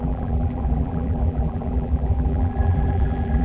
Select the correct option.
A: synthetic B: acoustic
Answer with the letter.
A